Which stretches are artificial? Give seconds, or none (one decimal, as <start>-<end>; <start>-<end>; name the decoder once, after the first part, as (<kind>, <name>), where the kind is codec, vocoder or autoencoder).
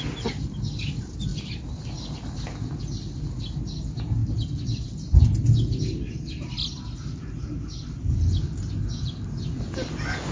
none